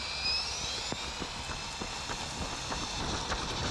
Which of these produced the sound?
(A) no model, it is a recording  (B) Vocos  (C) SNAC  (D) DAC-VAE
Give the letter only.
A